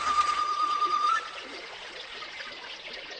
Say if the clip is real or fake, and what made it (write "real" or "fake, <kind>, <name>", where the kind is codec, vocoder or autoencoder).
fake, vocoder, Vocos